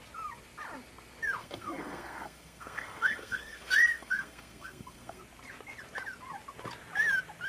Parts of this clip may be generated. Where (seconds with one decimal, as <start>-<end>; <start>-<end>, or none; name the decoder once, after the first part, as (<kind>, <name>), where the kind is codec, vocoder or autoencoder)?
1.4-5.2 (codec, SNAC)